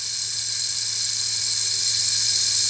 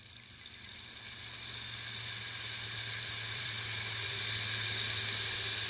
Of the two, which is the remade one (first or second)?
second